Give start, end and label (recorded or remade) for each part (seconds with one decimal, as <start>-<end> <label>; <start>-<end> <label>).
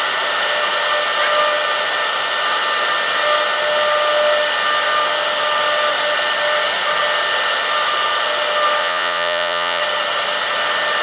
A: 0.0-8.8 recorded; 8.8-9.8 remade; 9.8-11.0 recorded